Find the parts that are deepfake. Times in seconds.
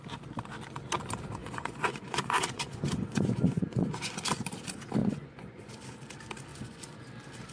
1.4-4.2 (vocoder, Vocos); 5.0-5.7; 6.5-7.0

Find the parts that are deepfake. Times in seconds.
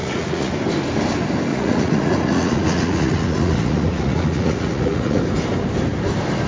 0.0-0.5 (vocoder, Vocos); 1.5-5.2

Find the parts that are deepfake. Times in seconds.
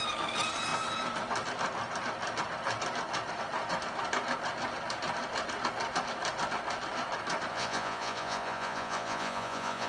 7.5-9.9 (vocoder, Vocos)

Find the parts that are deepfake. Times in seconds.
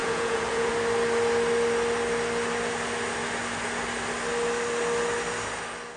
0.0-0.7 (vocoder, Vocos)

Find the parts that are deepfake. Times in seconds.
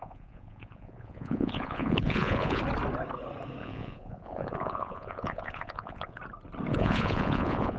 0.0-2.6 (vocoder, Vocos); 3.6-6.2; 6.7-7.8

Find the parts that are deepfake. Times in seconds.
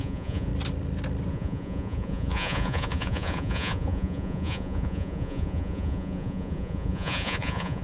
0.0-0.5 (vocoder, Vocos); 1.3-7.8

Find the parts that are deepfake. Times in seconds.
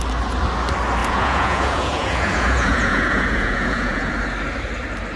1.0-4.1 (vocoder, Vocos)